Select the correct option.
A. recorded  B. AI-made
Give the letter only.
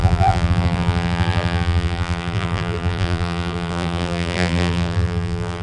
B